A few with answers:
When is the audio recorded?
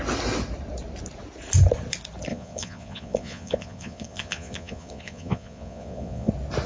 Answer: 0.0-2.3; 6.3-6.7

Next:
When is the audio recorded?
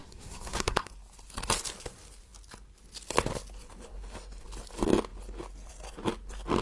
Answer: 0.9-6.6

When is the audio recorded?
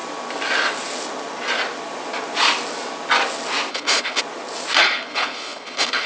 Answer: 0.0-3.7; 4.2-4.8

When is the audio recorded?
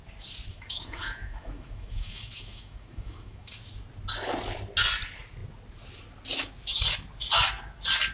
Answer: 0.0-0.5; 3.5-8.1